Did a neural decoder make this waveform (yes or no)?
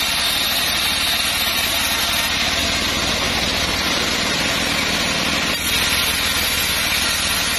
no